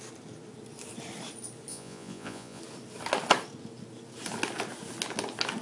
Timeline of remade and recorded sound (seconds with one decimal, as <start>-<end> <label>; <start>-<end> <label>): 0.0-1.7 recorded; 1.7-2.6 remade; 2.6-5.6 recorded